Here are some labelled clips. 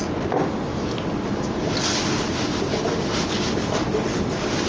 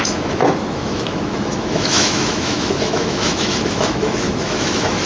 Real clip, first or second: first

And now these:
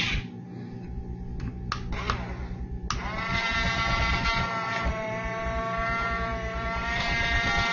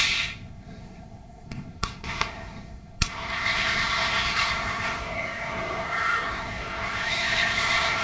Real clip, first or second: first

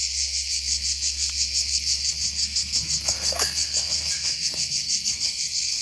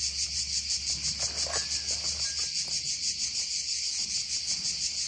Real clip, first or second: second